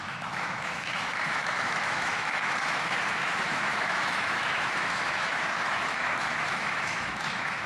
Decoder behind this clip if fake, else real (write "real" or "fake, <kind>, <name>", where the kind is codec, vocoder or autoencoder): fake, autoencoder, DAC-VAE